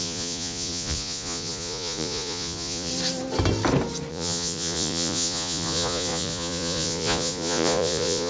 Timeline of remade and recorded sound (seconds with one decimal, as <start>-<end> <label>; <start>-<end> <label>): 0.0-2.9 remade; 2.9-4.1 recorded; 4.1-8.3 remade